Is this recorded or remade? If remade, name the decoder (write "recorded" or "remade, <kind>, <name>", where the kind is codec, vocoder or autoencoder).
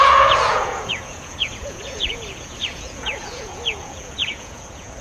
remade, vocoder, Vocos